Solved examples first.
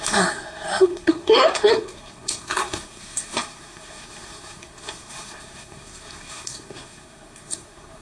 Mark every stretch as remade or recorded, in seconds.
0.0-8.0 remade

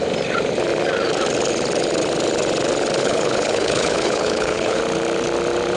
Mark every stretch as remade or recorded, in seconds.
0.0-3.0 recorded; 3.0-4.8 remade; 4.8-5.8 recorded

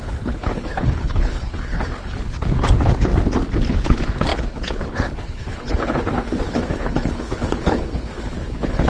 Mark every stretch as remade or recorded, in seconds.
0.0-3.1 remade; 3.1-3.7 recorded; 3.7-8.9 remade

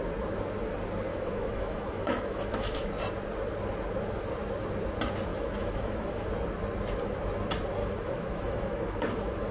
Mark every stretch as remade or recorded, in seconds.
0.0-1.1 recorded; 1.1-2.9 remade; 2.9-5.3 recorded; 5.3-6.3 remade; 6.3-7.8 recorded; 7.8-9.5 remade

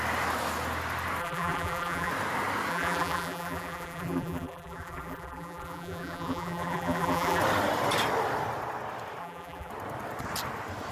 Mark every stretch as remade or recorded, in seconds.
0.0-1.2 recorded; 1.2-2.1 remade; 2.1-2.7 recorded; 2.7-7.4 remade; 7.4-9.2 recorded; 9.2-9.7 remade; 9.7-10.9 recorded

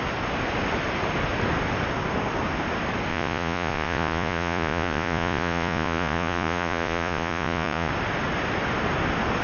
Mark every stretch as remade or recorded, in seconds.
0.0-3.1 recorded; 3.1-7.9 remade; 7.9-9.4 recorded